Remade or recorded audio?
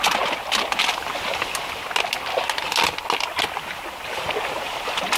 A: recorded